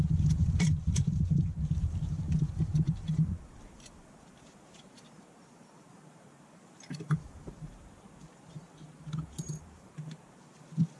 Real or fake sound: fake